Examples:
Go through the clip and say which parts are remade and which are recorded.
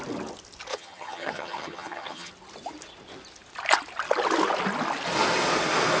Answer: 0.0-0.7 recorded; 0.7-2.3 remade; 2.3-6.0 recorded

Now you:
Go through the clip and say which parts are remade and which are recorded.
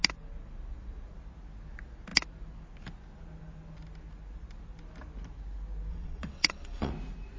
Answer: 0.0-5.9 recorded; 5.9-6.9 remade; 6.9-7.4 recorded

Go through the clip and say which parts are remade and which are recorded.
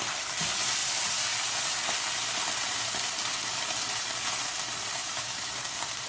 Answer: 0.0-5.0 recorded; 5.0-5.5 remade; 5.5-6.1 recorded